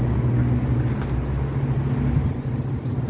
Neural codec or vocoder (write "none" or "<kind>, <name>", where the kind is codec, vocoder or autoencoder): none